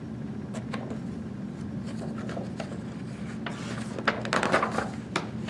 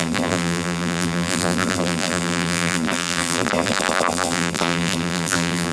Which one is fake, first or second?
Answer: second